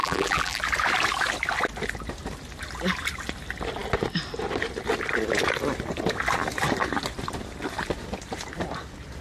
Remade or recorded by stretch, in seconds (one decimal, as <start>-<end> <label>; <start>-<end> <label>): 0.0-0.6 remade; 0.6-9.2 recorded